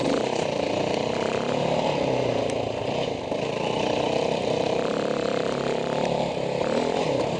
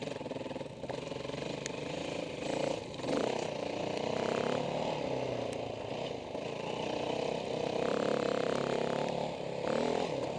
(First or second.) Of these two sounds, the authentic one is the second